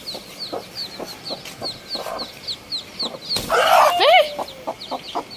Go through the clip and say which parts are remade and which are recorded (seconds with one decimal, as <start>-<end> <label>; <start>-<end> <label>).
0.0-5.4 recorded

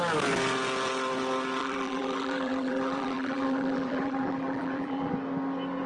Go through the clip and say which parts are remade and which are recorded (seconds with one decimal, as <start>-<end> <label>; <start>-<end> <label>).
0.0-1.6 recorded; 1.6-5.1 remade; 5.1-5.9 recorded

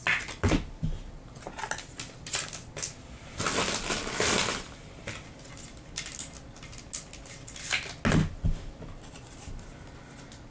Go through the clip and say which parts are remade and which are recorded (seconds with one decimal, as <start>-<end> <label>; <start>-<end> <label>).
0.0-10.5 recorded

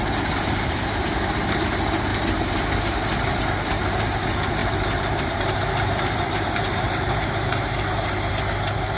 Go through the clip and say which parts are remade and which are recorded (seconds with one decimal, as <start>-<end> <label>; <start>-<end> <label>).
0.0-2.1 recorded; 2.1-3.0 remade; 3.0-4.6 recorded; 4.6-7.6 remade; 7.6-9.0 recorded

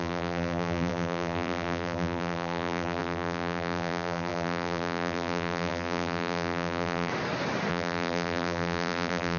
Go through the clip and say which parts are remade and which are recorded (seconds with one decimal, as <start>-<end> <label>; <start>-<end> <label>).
0.0-7.1 remade; 7.1-7.7 recorded; 7.7-9.4 remade

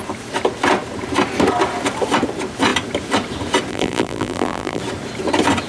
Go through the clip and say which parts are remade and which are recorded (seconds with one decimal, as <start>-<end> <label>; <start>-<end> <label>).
0.0-3.7 recorded; 3.7-4.8 remade; 4.8-5.7 recorded

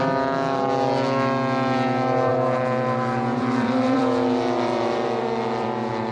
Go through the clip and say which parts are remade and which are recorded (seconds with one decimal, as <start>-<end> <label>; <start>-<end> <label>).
0.0-2.3 recorded; 2.3-6.1 remade